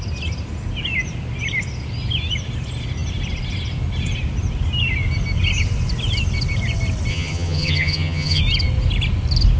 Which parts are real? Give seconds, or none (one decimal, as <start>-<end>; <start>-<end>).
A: 0.0-7.1; 8.4-9.6